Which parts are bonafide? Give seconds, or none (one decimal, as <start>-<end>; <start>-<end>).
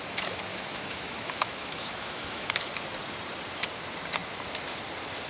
0.0-0.5; 2.5-5.3